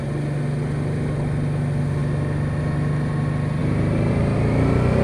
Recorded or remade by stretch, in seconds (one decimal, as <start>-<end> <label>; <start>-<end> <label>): 0.0-5.0 recorded